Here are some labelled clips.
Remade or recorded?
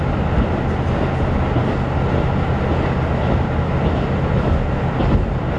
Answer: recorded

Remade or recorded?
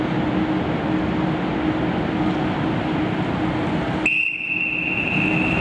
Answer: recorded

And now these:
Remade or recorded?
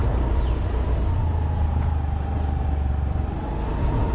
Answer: recorded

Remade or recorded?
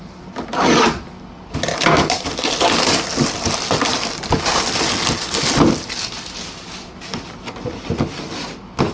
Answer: recorded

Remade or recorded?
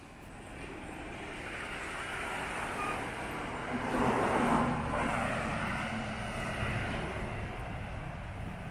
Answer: recorded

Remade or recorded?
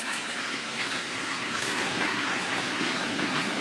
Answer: remade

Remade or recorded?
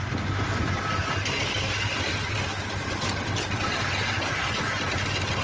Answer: recorded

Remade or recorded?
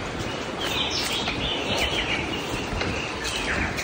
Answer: recorded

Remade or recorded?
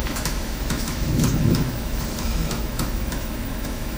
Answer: remade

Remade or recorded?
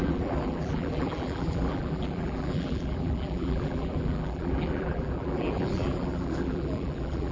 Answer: remade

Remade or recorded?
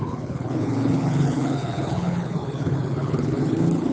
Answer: remade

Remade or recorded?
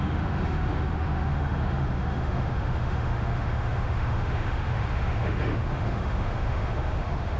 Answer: remade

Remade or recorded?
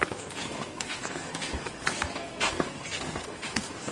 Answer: remade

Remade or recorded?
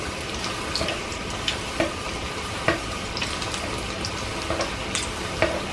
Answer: remade